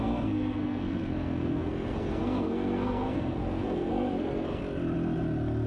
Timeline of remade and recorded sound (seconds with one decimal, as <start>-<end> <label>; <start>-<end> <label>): 0.0-4.6 remade; 4.6-5.7 recorded